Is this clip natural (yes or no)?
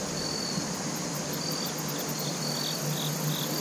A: yes